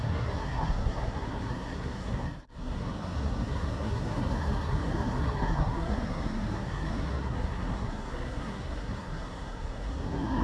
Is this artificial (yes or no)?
yes